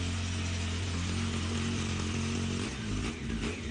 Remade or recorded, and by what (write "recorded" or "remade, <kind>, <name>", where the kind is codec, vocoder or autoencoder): recorded